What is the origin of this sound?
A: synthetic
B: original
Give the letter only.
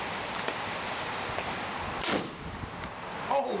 B